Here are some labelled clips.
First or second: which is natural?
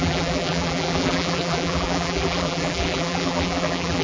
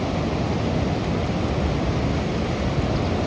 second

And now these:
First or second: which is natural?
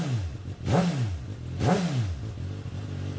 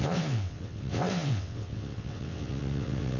first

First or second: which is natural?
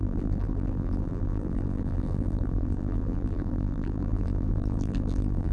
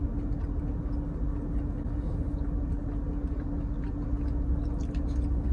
second